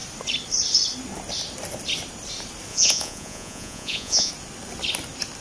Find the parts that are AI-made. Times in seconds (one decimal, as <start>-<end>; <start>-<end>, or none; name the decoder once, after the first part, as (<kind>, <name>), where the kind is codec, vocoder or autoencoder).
2.7-4.3 (vocoder, Vocos)